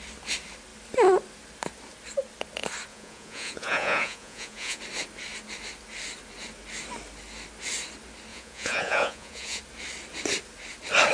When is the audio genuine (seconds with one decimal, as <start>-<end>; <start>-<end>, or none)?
0.0-2.9; 4.8-8.3; 9.6-11.1